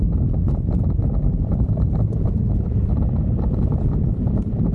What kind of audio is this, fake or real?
fake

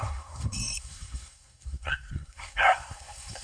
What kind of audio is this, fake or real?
fake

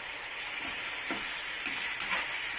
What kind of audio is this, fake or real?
real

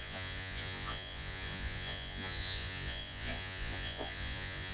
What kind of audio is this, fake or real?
fake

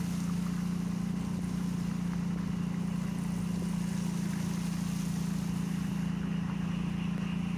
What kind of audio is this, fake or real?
real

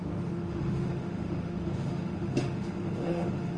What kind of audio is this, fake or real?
fake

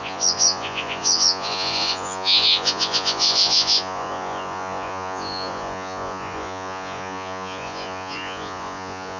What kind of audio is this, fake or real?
fake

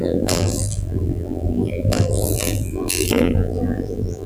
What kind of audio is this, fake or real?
fake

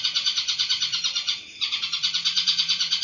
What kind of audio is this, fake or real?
fake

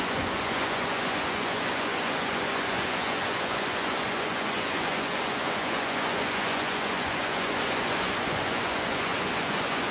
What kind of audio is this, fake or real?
fake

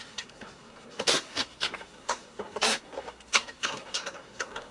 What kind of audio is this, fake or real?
fake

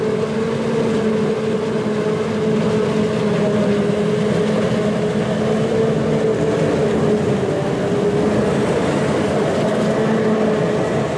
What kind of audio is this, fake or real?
real